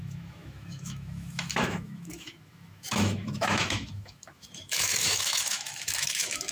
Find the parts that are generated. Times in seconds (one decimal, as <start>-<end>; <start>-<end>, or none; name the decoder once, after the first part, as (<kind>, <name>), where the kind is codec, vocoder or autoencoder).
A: 0.0-6.5 (autoencoder, DAC-VAE)